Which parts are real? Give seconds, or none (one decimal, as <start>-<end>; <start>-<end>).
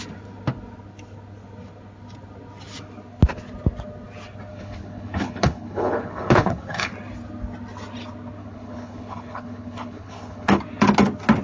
0.0-4.5; 6.9-8.4; 10.6-11.4